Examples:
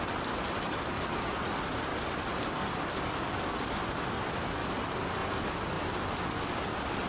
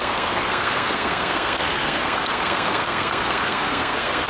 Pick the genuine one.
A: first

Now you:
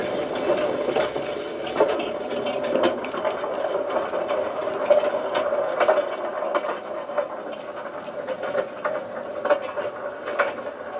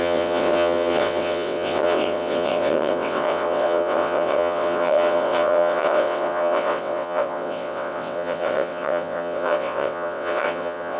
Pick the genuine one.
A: first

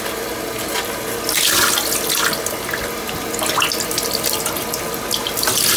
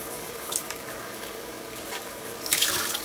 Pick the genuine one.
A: first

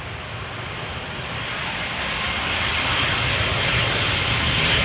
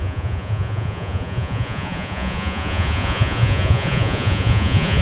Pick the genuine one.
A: first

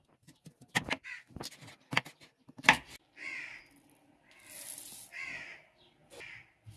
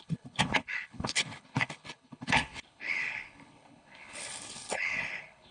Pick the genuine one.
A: first